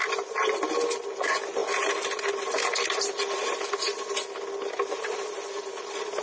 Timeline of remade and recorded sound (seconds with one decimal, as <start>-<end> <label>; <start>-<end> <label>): 0.0-6.2 recorded